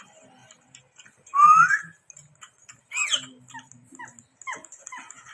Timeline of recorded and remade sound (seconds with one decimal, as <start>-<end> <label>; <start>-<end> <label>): 0.0-5.3 recorded